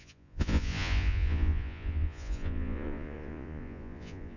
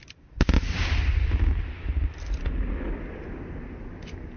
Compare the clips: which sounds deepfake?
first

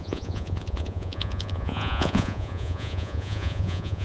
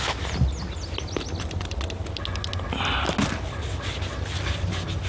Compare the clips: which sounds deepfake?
first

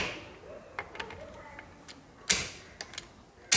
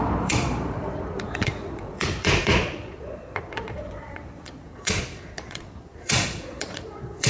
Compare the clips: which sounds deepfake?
second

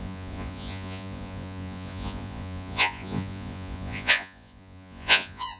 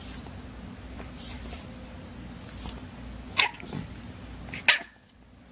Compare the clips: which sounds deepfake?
first